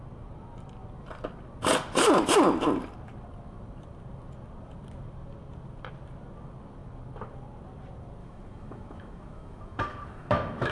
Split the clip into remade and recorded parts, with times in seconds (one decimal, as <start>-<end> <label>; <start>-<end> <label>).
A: 0.0-8.2 recorded; 8.2-10.7 remade